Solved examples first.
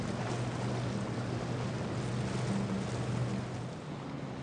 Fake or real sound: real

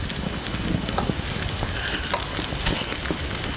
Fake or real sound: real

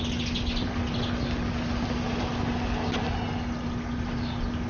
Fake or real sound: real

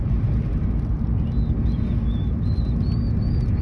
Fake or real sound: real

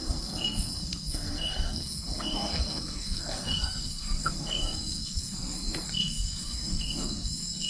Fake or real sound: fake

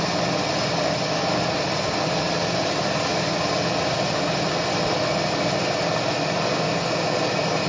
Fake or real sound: real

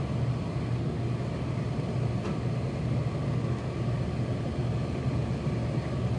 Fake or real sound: real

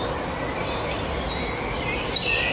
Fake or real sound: real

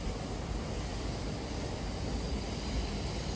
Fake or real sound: real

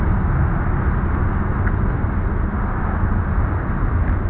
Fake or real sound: real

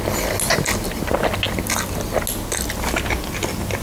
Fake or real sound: real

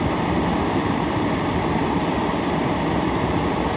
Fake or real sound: real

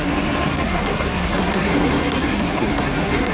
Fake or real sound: fake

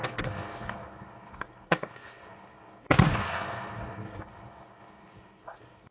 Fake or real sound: fake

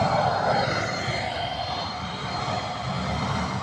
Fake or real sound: fake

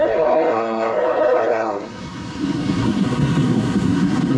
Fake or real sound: fake